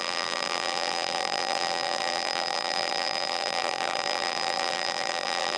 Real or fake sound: fake